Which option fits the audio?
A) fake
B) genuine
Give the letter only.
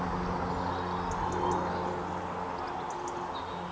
B